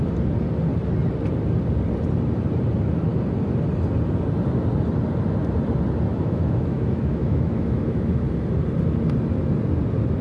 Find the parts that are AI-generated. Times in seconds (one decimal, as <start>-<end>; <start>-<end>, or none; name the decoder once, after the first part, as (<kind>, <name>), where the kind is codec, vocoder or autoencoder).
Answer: 6.1-8.3 (autoencoder, DAC-VAE)